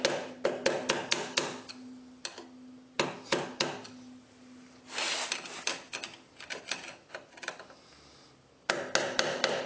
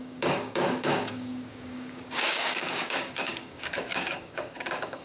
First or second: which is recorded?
first